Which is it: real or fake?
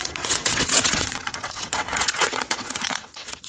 fake